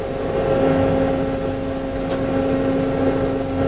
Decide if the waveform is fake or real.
real